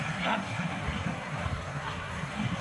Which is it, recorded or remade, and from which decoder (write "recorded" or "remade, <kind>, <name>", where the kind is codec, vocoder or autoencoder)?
remade, codec, SNAC